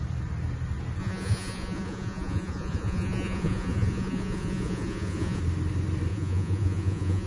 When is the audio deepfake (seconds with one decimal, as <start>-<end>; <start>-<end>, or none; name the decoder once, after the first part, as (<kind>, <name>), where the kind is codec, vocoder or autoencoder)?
1.0-5.4 (vocoder, Vocos); 6.1-7.3